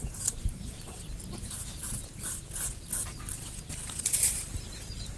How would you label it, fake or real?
fake